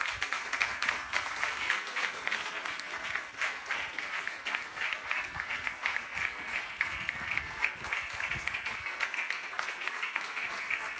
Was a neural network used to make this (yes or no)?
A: yes